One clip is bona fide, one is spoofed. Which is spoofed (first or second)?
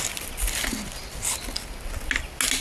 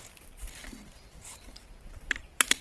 second